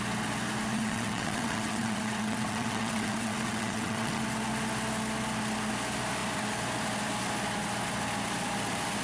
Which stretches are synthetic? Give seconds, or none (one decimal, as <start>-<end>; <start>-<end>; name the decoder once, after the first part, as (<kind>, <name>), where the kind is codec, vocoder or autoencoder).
0.7-4.2 (vocoder, WaveNeXt)